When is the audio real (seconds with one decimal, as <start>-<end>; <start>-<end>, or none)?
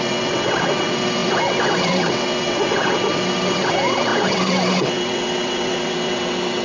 none